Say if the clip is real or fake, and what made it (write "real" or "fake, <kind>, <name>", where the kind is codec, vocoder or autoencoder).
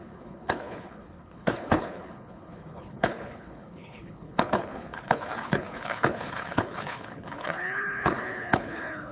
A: fake, codec, HILCodec